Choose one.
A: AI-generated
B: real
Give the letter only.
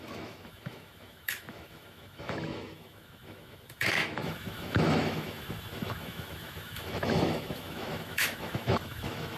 A